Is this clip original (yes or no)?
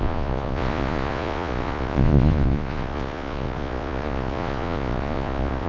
no